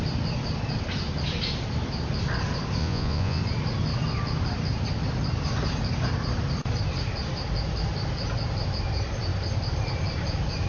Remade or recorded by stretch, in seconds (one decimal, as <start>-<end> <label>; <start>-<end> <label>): 0.0-2.8 recorded; 2.8-3.4 remade; 3.4-10.7 recorded